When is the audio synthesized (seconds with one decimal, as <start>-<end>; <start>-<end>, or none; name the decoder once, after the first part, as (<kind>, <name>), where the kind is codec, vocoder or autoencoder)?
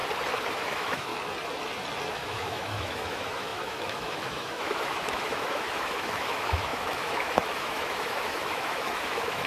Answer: 0.5-1.1 (autoencoder, DAC-VAE); 2.1-9.5